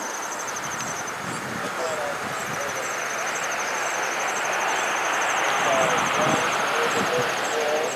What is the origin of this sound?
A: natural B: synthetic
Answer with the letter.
A